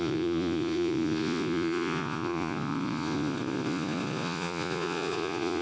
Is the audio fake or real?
fake